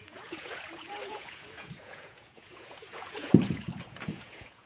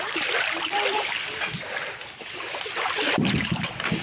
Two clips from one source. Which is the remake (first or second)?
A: first